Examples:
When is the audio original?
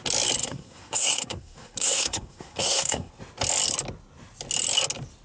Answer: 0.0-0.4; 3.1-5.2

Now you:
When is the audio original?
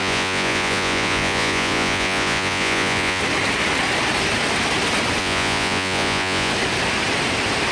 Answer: 3.2-5.2; 6.5-7.7